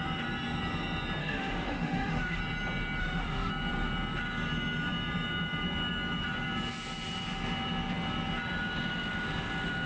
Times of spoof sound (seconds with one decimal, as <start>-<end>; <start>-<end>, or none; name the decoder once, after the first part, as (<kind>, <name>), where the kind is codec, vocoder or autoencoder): 1.2-2.4 (autoencoder, DAC-VAE); 3.0-3.5